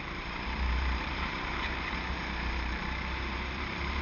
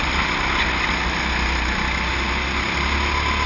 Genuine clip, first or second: second